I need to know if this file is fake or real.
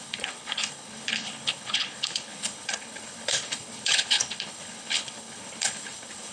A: fake